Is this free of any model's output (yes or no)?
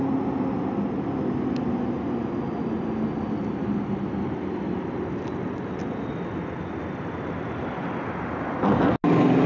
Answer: yes